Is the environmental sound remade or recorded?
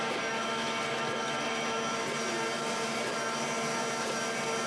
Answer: recorded